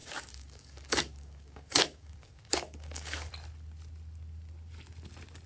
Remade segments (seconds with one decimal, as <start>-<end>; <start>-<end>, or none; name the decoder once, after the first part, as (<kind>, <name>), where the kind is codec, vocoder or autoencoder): 0.0-3.3 (codec, DAC)